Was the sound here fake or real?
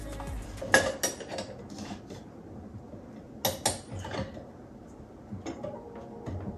real